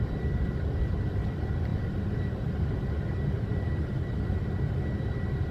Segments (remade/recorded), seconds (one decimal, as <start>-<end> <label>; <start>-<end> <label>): 0.0-5.5 recorded